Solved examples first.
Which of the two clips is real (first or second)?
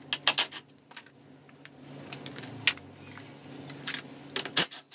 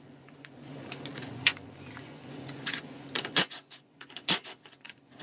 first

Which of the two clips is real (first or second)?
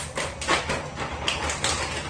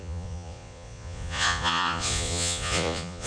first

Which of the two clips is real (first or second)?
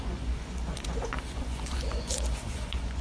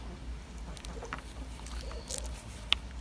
second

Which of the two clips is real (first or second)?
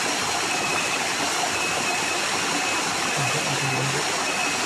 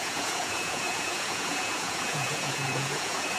first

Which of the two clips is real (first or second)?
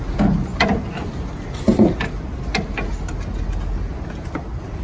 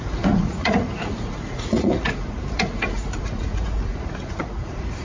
first